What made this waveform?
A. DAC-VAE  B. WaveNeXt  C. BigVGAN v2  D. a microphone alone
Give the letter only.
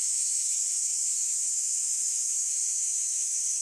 A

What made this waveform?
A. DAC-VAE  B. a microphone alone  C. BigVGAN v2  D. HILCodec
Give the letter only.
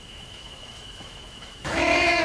A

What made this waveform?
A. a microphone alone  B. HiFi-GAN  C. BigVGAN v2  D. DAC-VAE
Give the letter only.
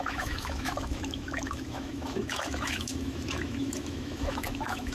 D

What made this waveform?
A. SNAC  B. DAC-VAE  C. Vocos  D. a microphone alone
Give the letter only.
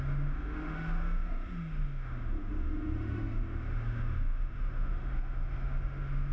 B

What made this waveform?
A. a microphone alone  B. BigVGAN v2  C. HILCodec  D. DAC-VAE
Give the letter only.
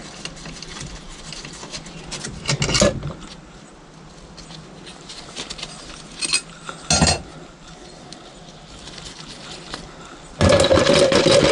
A